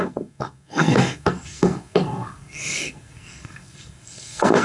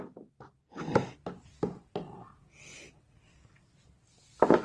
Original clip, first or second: second